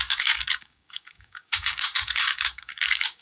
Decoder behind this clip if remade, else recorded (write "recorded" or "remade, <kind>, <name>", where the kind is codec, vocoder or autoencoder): remade, codec, DAC